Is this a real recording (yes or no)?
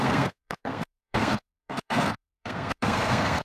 no